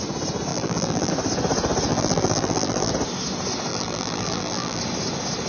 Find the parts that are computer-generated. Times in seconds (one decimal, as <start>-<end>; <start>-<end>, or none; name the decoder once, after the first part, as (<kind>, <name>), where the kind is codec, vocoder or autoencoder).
0.5-1.1 (vocoder, BigVGAN v2); 1.9-2.9; 3.7-4.8